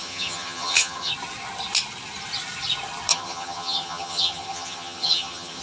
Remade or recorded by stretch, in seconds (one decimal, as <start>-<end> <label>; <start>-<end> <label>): 0.0-1.1 remade; 1.1-3.1 recorded; 3.1-5.6 remade